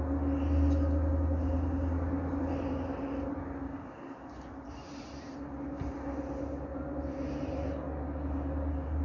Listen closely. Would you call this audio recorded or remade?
recorded